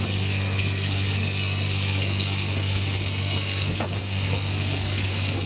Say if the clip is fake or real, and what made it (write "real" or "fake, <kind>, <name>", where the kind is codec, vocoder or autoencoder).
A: fake, codec, SNAC